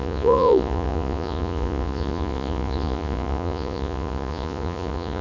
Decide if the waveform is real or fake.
fake